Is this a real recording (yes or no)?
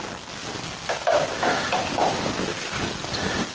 yes